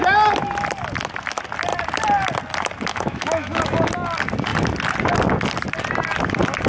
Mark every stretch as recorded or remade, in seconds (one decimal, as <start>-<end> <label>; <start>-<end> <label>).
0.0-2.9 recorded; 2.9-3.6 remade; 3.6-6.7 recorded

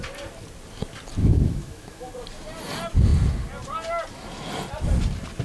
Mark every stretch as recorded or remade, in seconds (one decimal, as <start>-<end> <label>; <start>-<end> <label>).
0.0-1.2 recorded; 1.2-2.1 remade; 2.1-5.4 recorded

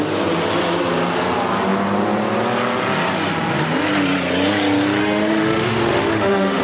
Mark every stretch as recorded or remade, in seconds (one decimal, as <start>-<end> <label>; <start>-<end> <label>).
0.0-5.0 recorded; 5.0-6.6 remade